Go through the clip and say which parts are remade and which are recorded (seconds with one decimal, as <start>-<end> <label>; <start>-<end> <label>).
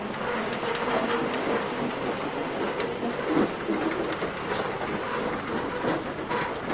0.0-6.7 recorded